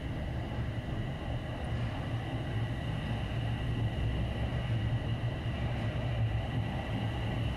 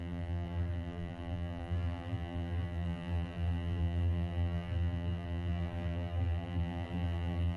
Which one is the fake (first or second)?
second